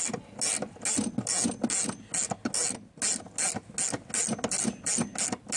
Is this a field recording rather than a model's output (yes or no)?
yes